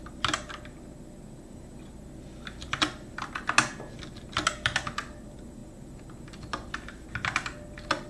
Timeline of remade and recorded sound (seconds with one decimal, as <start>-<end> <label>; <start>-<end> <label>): 0.0-8.1 recorded